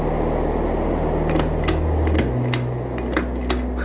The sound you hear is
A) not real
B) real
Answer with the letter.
B